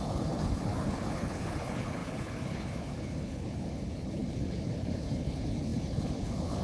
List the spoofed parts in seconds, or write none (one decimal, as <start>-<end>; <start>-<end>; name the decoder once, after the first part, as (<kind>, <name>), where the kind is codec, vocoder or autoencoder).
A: 0.0-6.6 (codec, HILCodec)